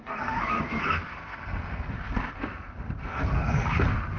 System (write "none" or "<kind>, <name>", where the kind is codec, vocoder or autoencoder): codec, SNAC